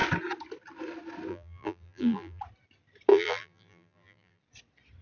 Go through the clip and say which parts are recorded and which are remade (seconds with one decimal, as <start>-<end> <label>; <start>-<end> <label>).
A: 0.0-1.3 recorded; 1.3-2.4 remade; 2.4-3.1 recorded; 3.1-4.4 remade; 4.4-5.0 recorded